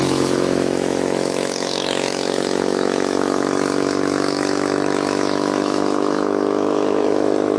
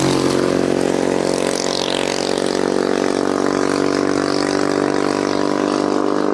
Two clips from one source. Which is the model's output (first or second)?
first